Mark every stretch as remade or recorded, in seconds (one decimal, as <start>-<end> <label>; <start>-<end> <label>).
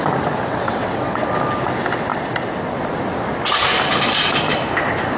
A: 0.0-0.5 recorded; 0.5-1.2 remade; 1.2-5.2 recorded